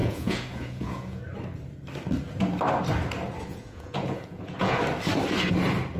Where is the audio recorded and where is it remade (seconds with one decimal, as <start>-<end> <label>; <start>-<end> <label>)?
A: 0.0-1.2 remade; 1.2-3.5 recorded; 3.5-4.8 remade; 4.8-6.0 recorded